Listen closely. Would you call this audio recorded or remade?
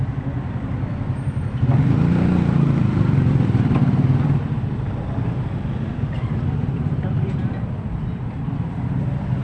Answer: remade